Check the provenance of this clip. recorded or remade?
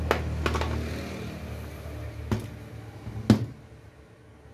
recorded